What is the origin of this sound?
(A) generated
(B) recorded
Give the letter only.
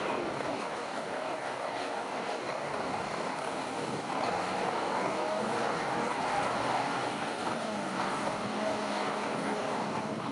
A